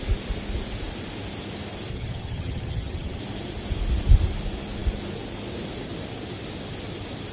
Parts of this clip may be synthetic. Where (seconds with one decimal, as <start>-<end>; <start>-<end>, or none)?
1.9-3.2